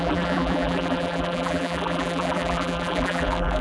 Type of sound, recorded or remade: remade